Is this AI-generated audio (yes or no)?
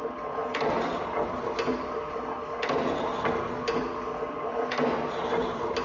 no